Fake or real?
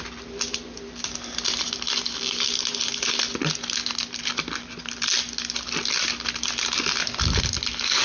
real